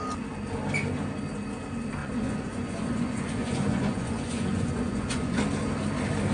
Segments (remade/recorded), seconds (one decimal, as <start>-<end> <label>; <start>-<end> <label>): 0.0-2.0 recorded; 2.0-5.4 remade; 5.4-6.3 recorded